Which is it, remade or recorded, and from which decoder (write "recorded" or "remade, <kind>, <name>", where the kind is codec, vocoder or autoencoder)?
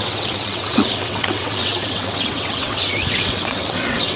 remade, vocoder, WaveNeXt